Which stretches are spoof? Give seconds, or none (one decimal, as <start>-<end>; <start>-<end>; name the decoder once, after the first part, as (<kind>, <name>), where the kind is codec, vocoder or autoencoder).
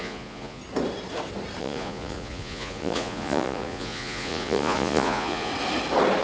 0.0-0.6 (vocoder, Vocos); 1.6-5.5